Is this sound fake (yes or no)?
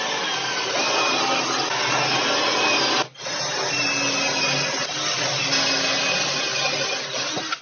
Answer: no